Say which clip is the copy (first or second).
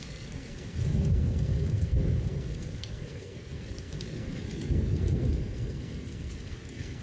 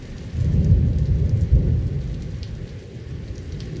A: first